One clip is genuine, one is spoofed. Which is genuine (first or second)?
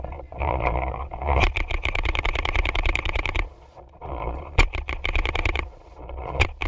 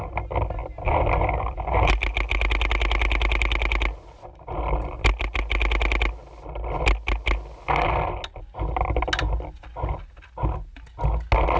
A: second